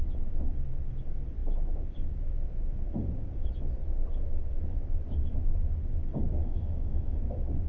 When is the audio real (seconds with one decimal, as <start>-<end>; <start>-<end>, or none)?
0.0-6.4; 7.2-7.7